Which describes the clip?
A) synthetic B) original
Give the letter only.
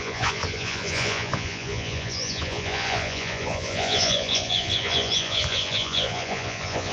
A